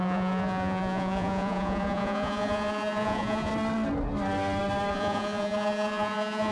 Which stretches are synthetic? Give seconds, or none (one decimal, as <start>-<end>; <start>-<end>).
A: 0.0-3.5; 4.9-6.5